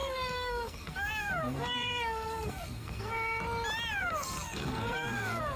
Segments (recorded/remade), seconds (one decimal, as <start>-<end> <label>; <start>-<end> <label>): 0.0-3.4 remade; 3.4-4.0 recorded; 4.0-5.6 remade